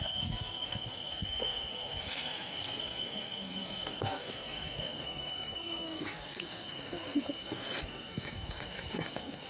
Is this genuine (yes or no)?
no